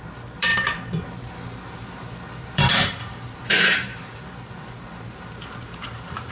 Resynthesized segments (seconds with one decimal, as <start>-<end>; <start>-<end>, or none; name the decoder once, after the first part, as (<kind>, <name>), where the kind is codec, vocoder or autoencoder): 0.0-6.3 (vocoder, BigVGAN v2)

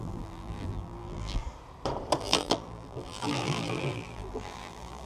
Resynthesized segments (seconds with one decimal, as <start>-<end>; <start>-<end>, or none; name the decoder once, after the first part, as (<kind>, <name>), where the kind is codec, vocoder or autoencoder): 0.0-1.4 (vocoder, BigVGAN v2); 2.2-5.1

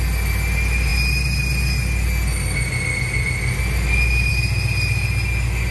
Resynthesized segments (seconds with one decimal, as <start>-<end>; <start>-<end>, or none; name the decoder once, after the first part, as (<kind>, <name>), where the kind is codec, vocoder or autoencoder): none

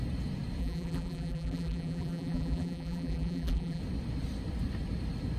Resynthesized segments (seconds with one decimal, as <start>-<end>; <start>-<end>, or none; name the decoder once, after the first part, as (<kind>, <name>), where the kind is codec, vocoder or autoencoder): 0.6-3.8 (vocoder, BigVGAN v2)

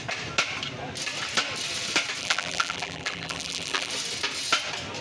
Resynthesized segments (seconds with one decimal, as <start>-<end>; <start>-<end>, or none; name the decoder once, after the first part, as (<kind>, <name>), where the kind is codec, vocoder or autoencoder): 2.2-3.9 (vocoder, BigVGAN v2)